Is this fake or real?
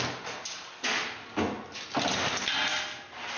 real